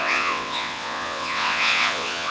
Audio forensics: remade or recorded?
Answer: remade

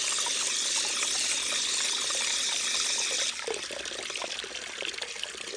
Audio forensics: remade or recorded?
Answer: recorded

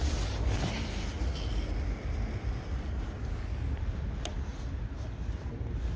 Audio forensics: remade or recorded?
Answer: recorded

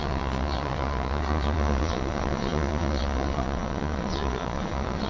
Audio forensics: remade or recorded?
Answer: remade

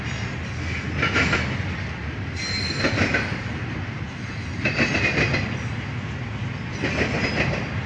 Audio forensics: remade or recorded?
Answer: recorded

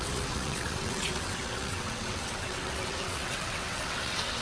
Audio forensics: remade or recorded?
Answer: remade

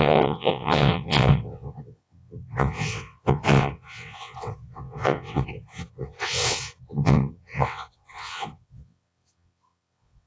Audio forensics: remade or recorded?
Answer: remade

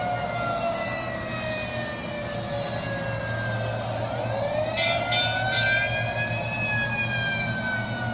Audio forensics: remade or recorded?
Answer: recorded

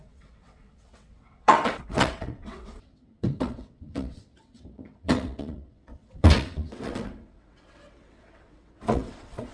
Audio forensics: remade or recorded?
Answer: remade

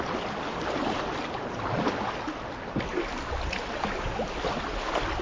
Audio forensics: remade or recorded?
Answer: recorded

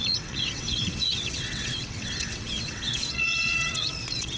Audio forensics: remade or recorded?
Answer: remade